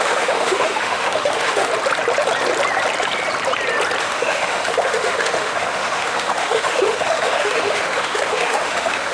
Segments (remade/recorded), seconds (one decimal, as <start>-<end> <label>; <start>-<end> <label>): 0.0-1.7 remade; 1.7-4.0 recorded; 4.0-9.1 remade